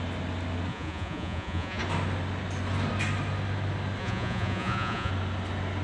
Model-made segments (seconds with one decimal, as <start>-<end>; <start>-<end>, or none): 0.7-1.8; 4.0-5.1